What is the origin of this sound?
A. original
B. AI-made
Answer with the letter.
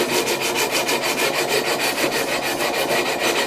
A